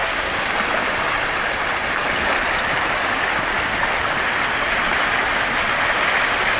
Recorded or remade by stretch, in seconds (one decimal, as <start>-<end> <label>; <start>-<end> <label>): 0.0-0.5 remade; 0.5-6.6 recorded

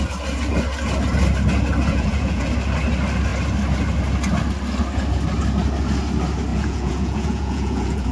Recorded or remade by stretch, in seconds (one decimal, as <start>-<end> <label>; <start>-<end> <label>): 0.0-1.9 recorded; 1.9-2.5 remade; 2.5-6.5 recorded; 6.5-8.1 remade